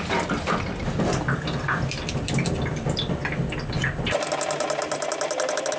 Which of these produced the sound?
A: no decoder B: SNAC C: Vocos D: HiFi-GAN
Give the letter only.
A